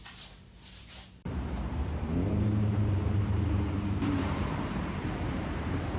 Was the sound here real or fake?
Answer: fake